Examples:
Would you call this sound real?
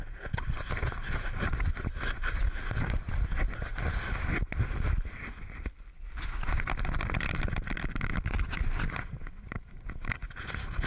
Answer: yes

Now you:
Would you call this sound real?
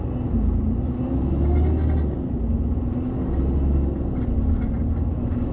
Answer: yes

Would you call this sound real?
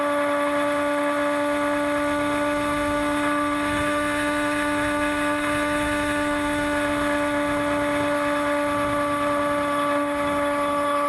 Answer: no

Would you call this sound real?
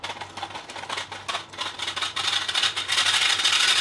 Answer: yes